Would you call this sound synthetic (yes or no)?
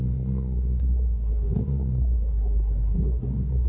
yes